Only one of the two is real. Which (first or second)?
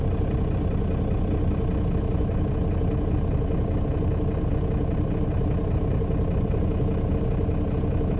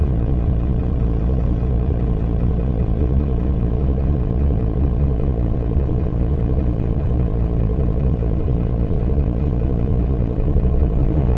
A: first